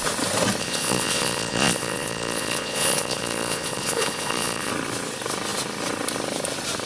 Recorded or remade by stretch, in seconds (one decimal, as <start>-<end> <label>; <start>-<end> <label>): 0.0-0.6 recorded; 0.6-4.7 remade; 4.7-6.9 recorded